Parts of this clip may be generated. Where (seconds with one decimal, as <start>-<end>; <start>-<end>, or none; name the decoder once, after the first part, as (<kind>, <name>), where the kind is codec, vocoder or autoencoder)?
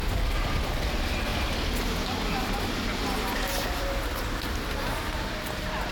none